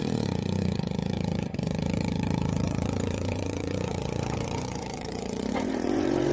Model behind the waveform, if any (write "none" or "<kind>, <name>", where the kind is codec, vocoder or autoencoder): vocoder, Vocos